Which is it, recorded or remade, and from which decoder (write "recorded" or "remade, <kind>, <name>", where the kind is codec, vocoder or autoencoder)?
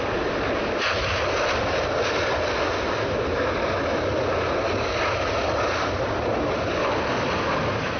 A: recorded